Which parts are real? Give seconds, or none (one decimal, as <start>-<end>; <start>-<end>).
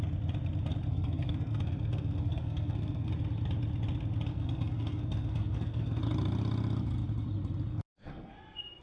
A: 0.0-0.9; 3.1-4.3; 6.0-7.7; 8.3-8.8